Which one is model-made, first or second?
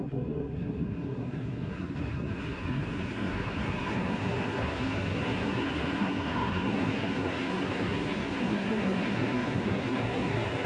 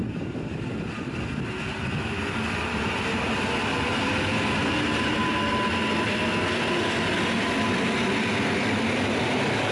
first